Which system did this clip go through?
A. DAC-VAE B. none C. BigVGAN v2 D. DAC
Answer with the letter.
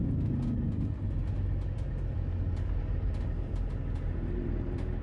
B